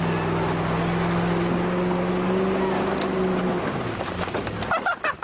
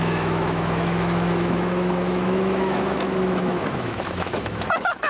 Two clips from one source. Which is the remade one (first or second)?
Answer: second